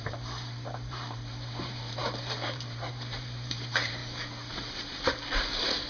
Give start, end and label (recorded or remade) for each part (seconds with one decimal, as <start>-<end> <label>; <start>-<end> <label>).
0.0-4.0 remade; 4.0-4.5 recorded; 4.5-5.9 remade